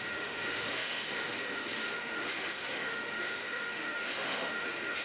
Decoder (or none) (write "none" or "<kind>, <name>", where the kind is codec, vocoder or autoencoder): autoencoder, DAC-VAE